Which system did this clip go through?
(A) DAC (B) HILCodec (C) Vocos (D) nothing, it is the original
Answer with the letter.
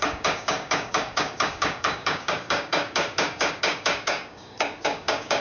A